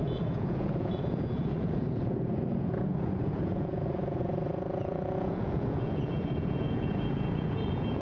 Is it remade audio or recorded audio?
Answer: remade